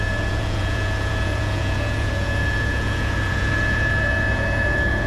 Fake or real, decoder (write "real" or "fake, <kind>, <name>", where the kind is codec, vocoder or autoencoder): fake, vocoder, Vocos